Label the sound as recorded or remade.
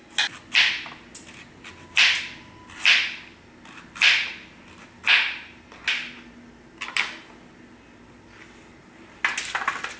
recorded